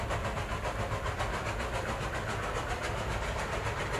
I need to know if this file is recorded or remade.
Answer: recorded